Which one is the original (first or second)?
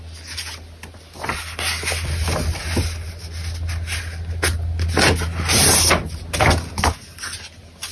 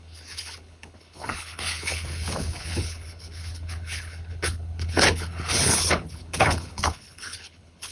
first